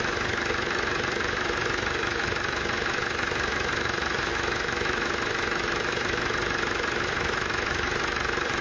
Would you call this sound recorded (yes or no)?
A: no